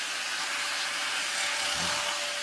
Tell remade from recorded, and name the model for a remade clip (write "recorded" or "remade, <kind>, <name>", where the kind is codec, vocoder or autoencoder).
recorded